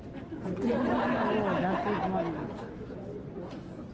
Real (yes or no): yes